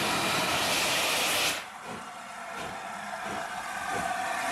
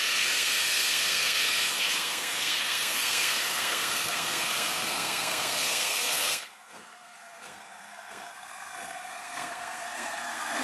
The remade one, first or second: second